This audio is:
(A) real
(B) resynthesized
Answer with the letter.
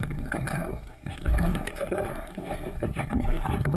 B